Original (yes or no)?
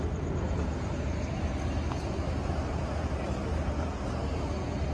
yes